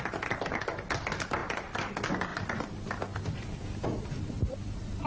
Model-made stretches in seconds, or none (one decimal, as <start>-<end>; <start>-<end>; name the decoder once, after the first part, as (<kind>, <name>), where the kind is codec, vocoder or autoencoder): 1.4-1.9 (vocoder, BigVGAN v2); 2.3-5.1